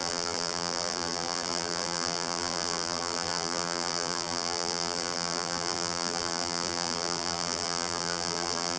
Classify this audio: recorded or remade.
remade